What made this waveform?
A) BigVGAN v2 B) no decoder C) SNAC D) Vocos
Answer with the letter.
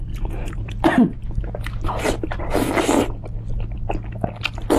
B